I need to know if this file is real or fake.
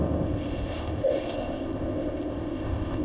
fake